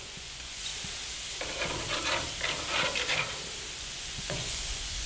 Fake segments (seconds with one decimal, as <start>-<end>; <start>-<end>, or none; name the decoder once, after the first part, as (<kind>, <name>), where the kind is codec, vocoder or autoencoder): 0.0-0.7 (vocoder, Vocos); 3.8-5.1